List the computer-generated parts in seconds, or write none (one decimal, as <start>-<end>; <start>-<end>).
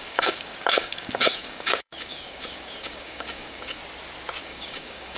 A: 0.0-3.8; 4.4-5.2